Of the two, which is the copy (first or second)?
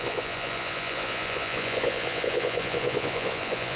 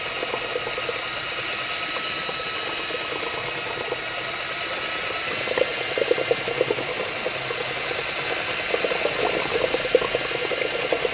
first